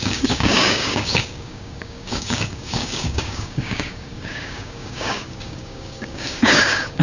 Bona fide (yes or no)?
no